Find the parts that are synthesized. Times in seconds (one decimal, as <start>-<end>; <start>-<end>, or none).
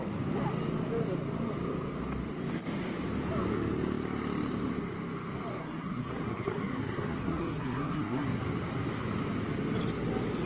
5.6-8.4